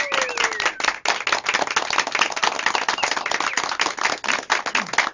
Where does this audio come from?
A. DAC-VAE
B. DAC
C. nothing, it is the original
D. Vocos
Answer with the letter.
C